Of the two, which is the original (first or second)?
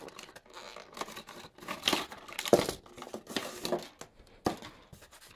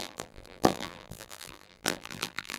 first